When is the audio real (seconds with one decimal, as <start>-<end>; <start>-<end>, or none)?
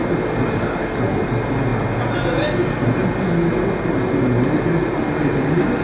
0.0-5.8